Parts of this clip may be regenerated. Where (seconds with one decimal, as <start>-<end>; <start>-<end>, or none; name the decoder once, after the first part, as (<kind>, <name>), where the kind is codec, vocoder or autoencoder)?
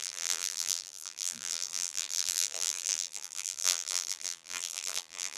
0.0-5.4 (vocoder, BigVGAN v2)